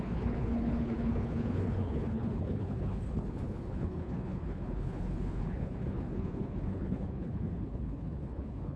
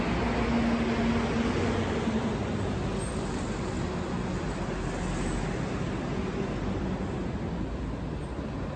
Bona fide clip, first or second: second